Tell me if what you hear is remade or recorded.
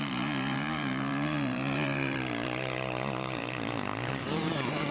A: remade